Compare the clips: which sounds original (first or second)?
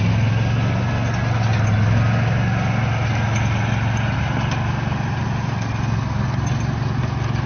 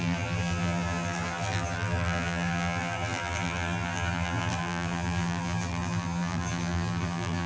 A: first